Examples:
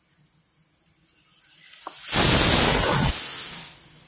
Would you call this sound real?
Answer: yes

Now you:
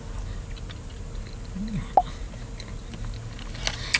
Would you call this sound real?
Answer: yes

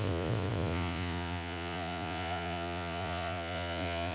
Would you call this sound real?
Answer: no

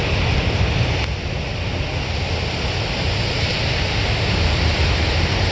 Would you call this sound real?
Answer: yes